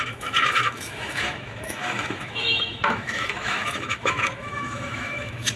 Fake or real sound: fake